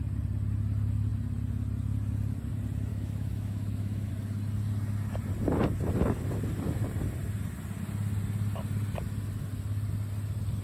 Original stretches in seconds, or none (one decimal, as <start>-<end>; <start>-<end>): 0.0-2.9; 4.1-10.6

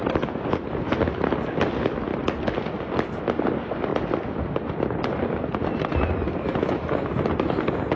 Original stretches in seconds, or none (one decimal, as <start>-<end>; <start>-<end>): 0.0-8.0

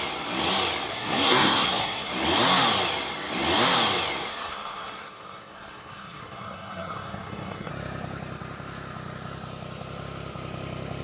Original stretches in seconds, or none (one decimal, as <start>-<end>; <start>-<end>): 0.0-0.9; 2.1-4.3; 7.7-11.0

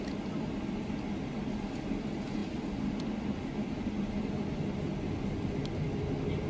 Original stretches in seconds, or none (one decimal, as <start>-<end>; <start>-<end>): 0.0-6.5

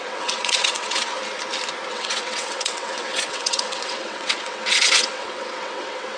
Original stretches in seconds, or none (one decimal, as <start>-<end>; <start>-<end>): 1.1-1.9